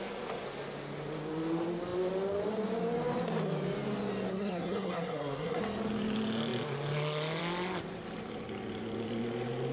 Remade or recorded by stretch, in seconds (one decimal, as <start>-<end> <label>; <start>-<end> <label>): 0.0-4.3 recorded; 4.3-5.6 remade; 5.6-9.7 recorded